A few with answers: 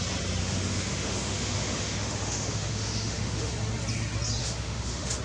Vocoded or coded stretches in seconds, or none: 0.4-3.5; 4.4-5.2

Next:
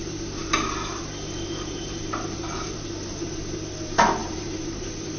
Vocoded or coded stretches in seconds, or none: 4.2-5.2

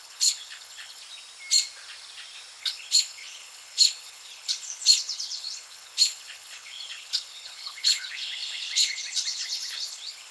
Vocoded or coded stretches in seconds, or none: 0.0-1.0; 2.6-10.3

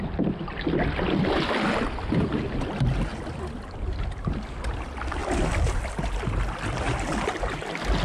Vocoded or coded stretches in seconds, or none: none

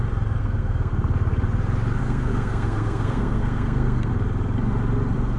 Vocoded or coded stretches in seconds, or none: 0.4-0.9; 2.0-4.1

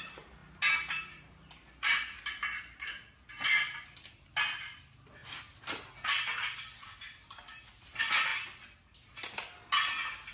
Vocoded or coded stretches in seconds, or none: none

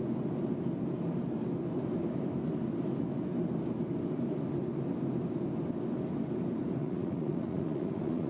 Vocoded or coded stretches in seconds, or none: 6.8-8.3

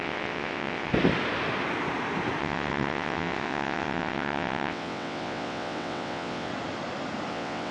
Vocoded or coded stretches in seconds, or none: 0.0-0.9; 2.4-6.5; 7.3-7.7